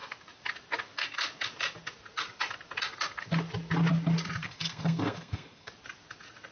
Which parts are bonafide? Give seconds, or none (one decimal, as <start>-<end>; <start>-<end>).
0.0-4.4; 5.7-6.5